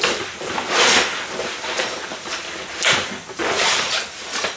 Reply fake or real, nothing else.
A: real